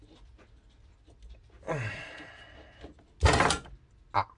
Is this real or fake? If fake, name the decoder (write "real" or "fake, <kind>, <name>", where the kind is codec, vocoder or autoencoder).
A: real